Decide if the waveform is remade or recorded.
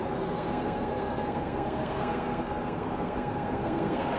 remade